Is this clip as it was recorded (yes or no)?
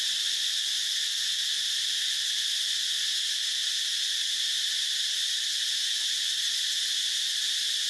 yes